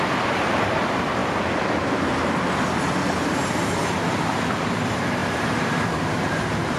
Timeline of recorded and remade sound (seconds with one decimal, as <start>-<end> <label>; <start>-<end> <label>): 0.0-1.2 remade; 1.2-3.2 recorded; 3.2-3.8 remade; 3.8-4.3 recorded; 4.3-6.8 remade